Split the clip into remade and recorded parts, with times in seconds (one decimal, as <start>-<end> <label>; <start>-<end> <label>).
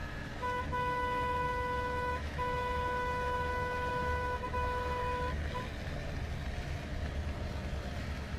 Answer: 0.0-5.0 remade; 5.0-8.0 recorded; 8.0-8.4 remade